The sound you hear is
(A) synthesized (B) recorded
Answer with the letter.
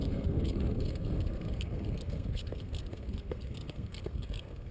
A